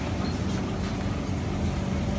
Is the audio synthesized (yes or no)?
no